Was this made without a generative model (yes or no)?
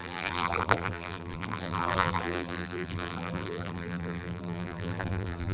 no